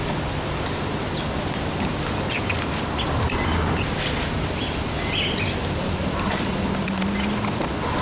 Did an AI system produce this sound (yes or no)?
no